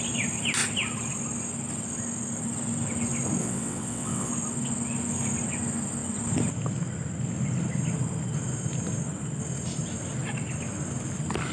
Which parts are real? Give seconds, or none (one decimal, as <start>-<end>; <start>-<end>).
0.0-3.4; 4.3-11.5